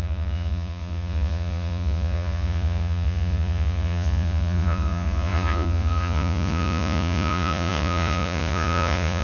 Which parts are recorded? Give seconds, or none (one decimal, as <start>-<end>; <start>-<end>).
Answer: none

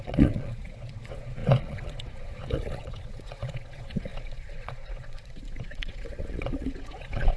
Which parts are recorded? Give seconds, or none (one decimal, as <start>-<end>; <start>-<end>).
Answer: none

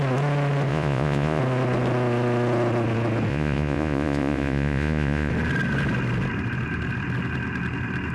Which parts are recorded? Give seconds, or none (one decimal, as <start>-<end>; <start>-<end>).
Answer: 0.0-0.7; 1.4-3.3; 5.3-8.1

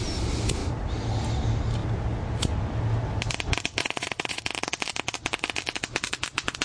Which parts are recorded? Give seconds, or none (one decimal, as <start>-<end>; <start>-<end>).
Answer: 0.0-3.8; 4.4-6.6